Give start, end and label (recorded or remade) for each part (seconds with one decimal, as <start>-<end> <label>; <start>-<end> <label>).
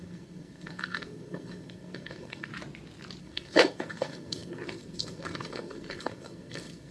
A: 0.0-2.5 remade; 2.5-3.2 recorded; 3.2-6.9 remade